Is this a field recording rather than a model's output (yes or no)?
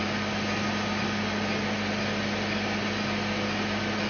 yes